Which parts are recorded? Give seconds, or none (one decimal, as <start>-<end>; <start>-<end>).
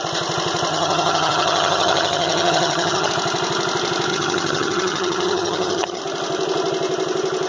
0.0-0.7; 3.1-4.1; 6.0-7.5